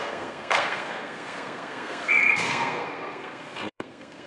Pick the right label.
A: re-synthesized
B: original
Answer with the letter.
A